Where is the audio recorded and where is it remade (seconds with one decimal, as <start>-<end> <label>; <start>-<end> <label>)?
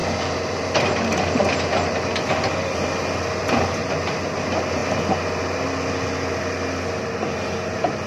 0.0-8.1 recorded